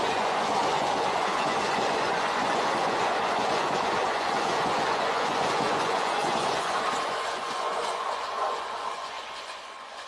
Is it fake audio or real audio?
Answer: fake